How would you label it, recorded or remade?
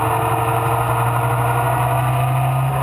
recorded